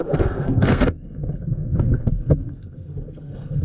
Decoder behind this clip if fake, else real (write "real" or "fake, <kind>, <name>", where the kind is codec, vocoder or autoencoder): fake, codec, SNAC